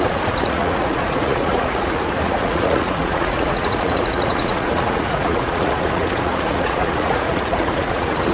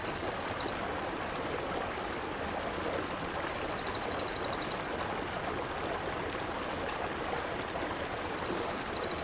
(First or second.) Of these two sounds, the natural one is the second